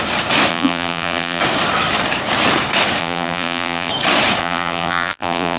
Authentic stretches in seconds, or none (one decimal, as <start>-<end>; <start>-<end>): 0.0-0.5; 1.4-3.0; 3.9-4.4

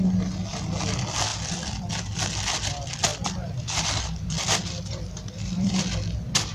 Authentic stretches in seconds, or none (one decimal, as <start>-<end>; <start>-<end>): 0.0-1.3; 2.0-3.1; 5.8-6.5

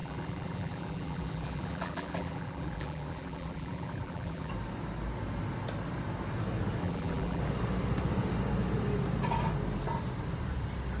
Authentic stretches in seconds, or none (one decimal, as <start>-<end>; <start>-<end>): 4.5-6.8; 7.4-11.0